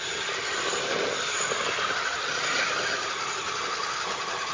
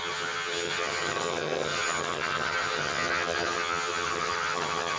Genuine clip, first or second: first